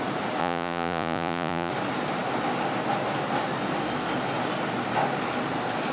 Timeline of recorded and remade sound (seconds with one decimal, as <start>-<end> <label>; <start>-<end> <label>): 0.0-0.4 recorded; 0.4-1.7 remade; 1.7-5.9 recorded